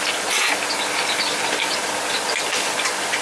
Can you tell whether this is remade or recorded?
recorded